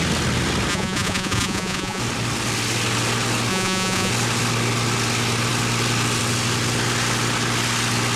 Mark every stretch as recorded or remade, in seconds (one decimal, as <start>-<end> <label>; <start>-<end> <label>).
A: 0.0-0.7 recorded; 0.7-2.0 remade; 2.0-3.5 recorded; 3.5-4.1 remade; 4.1-8.2 recorded